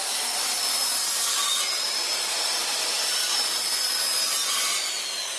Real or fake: fake